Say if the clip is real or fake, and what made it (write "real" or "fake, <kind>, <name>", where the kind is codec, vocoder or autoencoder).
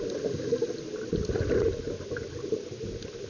real